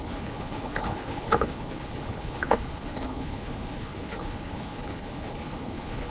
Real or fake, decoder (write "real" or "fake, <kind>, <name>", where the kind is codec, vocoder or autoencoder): fake, codec, HILCodec